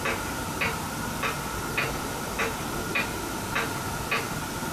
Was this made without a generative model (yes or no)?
yes